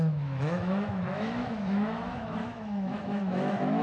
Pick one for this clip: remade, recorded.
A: remade